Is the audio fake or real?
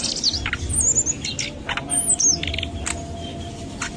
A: real